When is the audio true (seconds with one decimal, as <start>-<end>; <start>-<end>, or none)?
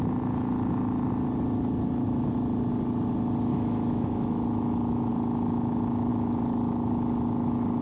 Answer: 0.0-3.5; 5.1-7.8